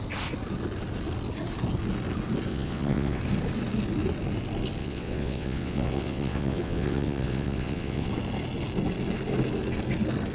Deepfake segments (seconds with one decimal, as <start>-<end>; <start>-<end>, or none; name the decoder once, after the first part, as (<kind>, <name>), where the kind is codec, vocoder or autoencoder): 2.5-3.2 (vocoder, WaveNeXt); 4.8-8.1